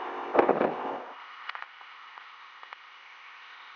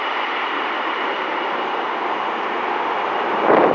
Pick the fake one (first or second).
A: first